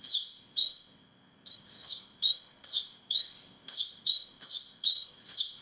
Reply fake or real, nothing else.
fake